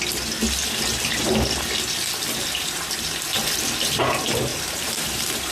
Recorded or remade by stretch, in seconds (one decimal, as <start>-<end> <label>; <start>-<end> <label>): 0.0-4.5 recorded; 4.5-5.5 remade